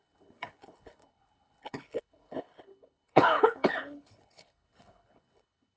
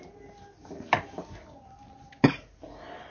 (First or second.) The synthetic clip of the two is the first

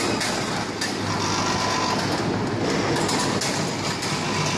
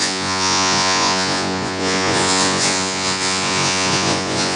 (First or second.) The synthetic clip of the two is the second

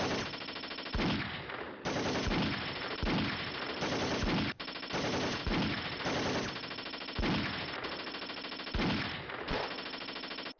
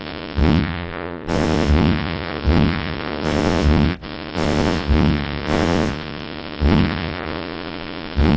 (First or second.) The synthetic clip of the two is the second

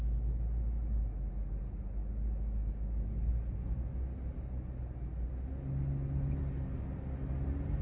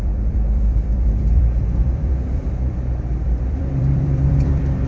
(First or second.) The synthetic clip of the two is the second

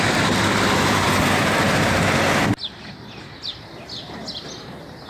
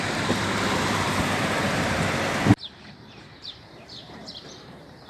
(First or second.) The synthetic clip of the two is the second